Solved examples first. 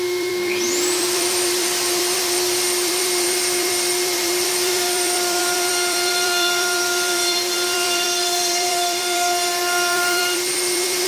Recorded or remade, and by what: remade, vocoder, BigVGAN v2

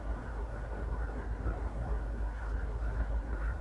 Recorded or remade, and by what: remade, codec, SNAC